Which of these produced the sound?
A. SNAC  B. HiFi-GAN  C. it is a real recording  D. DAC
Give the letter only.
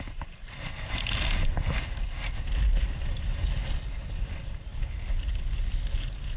C